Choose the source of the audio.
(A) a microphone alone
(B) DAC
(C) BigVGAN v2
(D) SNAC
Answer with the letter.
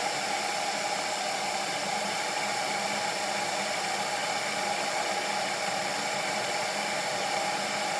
A